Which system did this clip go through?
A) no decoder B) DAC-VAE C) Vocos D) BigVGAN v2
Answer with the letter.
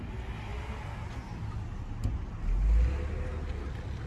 A